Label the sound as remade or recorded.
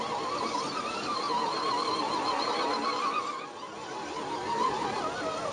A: recorded